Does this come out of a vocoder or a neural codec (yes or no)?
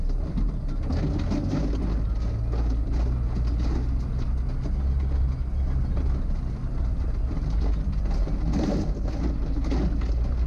no